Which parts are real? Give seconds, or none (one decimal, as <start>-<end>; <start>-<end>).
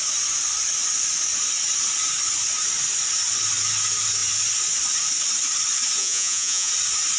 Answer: 0.0-6.0; 6.7-7.2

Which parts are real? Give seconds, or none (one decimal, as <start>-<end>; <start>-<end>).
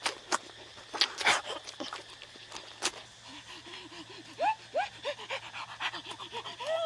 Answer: 0.0-6.9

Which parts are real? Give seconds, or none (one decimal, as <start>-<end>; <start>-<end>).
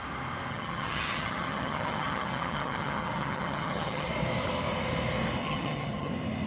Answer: 0.0-0.5; 4.1-5.4; 6.1-6.5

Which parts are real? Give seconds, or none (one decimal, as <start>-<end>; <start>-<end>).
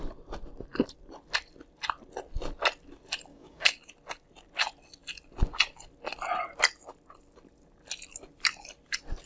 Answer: 0.0-3.3; 3.9-9.3